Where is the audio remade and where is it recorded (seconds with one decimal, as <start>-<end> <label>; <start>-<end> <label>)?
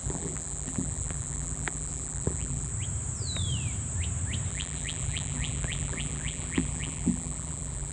0.0-2.7 remade; 2.7-4.5 recorded; 4.5-7.9 remade